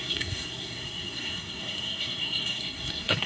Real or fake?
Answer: fake